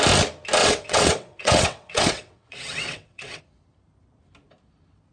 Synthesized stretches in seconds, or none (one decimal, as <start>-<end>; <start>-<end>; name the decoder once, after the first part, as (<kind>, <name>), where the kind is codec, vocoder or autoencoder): 0.6-3.4 (vocoder, WaveNeXt)